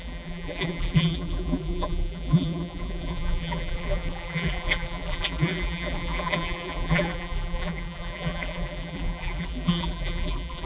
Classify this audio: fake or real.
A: fake